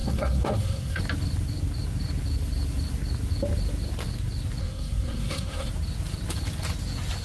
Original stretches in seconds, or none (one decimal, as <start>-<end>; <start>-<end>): 1.0-4.6; 5.7-7.2